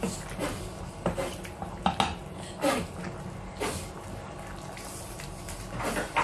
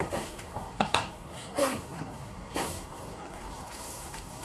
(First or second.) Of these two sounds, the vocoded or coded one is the second